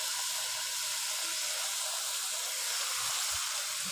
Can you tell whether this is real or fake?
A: real